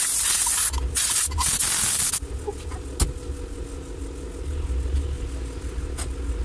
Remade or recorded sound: recorded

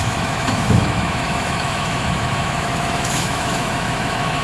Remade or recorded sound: remade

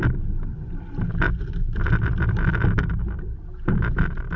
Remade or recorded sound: recorded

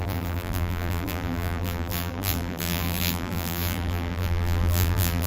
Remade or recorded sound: remade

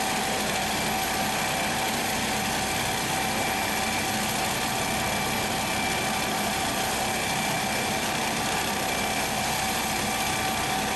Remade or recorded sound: recorded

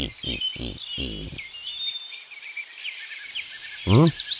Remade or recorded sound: recorded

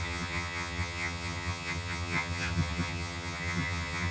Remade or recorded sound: remade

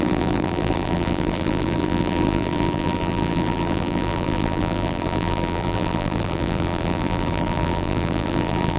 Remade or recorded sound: remade